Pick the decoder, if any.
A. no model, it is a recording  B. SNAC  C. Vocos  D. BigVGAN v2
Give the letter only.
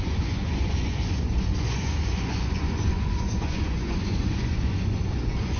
C